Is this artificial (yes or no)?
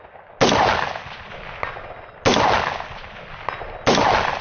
no